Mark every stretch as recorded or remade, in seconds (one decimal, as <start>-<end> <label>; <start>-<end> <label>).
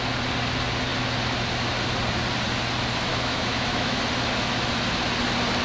0.0-3.1 recorded; 3.1-4.0 remade; 4.0-5.6 recorded